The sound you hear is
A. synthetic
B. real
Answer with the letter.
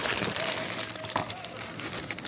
B